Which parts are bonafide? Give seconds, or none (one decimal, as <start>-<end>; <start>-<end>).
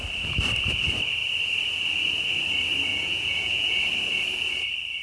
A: 0.0-2.9; 3.7-5.0